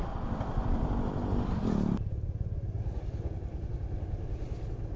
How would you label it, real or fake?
real